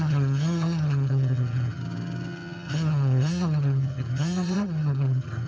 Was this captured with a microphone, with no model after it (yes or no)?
no